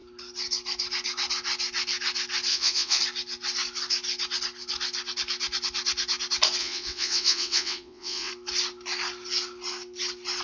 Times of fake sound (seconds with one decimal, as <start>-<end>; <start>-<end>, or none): 2.5-3.0; 6.6-8.3